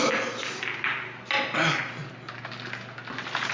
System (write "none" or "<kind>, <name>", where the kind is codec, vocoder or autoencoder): none